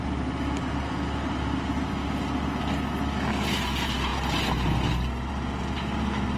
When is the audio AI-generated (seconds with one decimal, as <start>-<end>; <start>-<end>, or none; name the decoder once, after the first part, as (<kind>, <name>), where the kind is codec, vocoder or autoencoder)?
none